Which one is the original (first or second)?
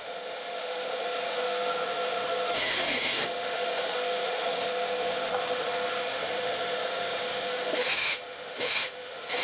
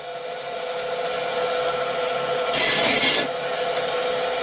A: second